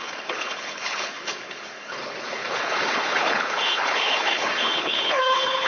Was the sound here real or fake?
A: fake